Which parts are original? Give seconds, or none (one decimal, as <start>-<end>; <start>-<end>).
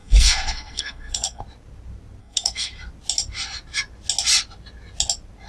1.4-2.2; 2.7-5.5